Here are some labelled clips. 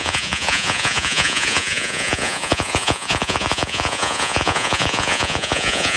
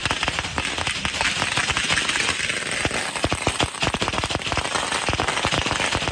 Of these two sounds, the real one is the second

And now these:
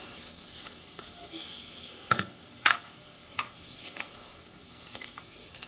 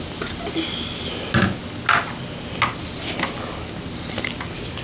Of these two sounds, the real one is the second